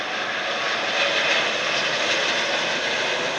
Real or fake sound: real